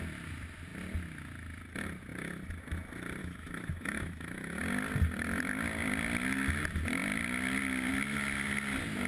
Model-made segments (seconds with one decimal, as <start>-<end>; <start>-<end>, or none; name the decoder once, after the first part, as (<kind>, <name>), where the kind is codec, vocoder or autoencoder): 3.2-4.6 (autoencoder, DAC-VAE)